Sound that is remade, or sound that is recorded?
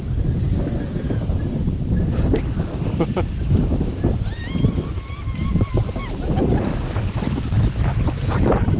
remade